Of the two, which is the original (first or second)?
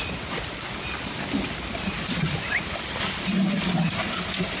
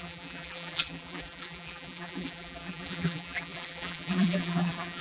first